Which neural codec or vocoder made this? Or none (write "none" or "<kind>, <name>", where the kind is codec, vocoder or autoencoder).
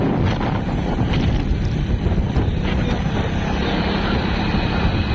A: none